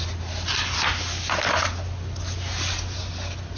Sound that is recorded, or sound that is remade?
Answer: recorded